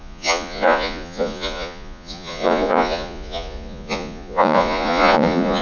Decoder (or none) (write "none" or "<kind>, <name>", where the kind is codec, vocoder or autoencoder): vocoder, Vocos